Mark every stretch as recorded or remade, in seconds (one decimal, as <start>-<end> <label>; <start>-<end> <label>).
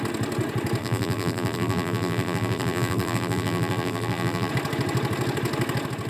0.0-0.8 recorded; 0.8-4.5 remade; 4.5-6.1 recorded